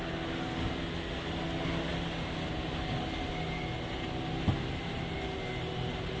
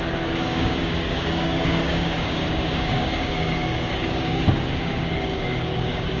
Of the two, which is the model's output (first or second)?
second